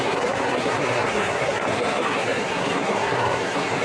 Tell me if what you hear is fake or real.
fake